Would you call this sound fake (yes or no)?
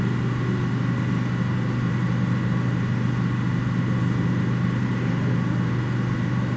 no